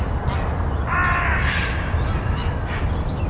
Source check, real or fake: real